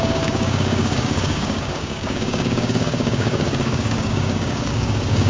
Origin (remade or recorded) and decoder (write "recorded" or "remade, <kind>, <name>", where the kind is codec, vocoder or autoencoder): remade, codec, DAC